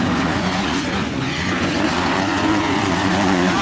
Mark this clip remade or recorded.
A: remade